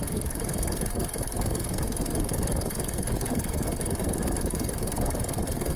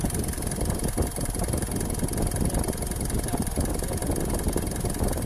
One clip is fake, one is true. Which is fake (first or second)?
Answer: first